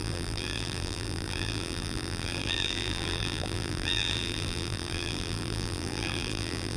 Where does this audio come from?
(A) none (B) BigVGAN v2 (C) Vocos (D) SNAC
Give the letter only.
B